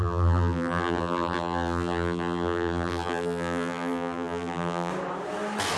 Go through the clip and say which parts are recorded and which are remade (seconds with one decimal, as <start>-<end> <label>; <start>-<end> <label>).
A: 0.0-4.9 remade; 4.9-5.8 recorded